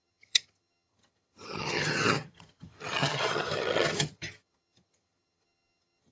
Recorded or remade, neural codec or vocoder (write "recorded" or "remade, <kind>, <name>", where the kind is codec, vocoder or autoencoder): remade, vocoder, HiFi-GAN